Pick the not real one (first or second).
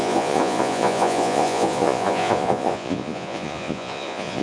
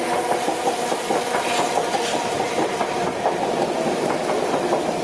first